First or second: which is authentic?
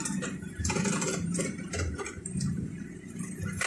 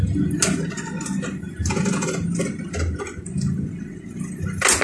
second